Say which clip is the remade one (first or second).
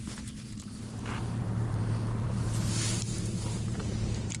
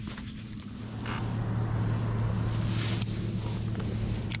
first